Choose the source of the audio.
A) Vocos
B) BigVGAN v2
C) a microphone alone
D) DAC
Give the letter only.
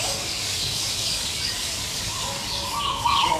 D